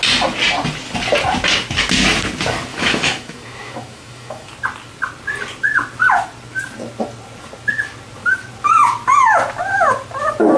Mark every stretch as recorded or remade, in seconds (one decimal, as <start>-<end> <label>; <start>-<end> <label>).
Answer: 0.0-2.7 recorded; 2.7-4.5 remade; 4.5-10.6 recorded